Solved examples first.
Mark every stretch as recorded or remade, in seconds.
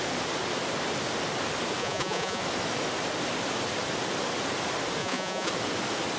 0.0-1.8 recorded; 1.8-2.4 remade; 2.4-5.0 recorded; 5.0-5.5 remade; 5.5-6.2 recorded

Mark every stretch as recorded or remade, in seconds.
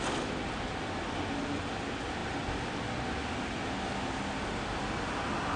0.0-5.6 recorded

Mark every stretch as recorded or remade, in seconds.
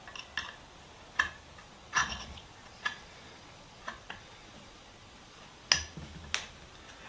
0.0-1.6 recorded; 1.6-5.5 remade; 5.5-7.1 recorded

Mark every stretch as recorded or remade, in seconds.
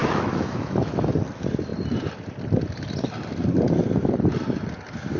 0.0-1.1 remade; 1.1-5.2 recorded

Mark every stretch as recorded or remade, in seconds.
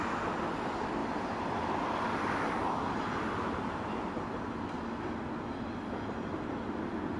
0.0-7.2 recorded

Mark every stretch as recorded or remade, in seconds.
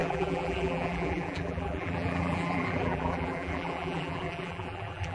0.0-5.1 remade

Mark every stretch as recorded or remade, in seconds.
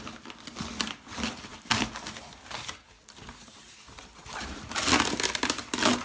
0.0-6.0 recorded